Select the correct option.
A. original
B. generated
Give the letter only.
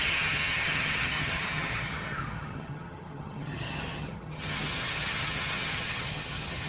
B